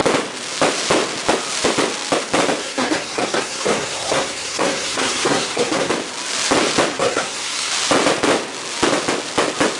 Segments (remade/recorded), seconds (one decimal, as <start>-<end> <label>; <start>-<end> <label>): 0.0-2.6 recorded; 2.6-5.9 remade; 5.9-6.9 recorded; 6.9-7.7 remade; 7.7-9.8 recorded